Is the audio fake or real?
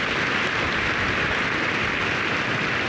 real